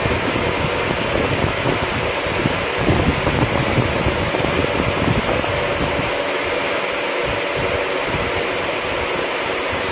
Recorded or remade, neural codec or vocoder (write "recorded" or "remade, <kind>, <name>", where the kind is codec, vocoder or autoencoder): recorded